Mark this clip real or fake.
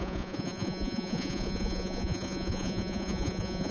fake